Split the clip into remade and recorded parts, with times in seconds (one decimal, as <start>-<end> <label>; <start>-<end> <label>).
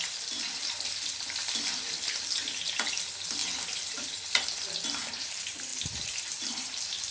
0.0-7.1 recorded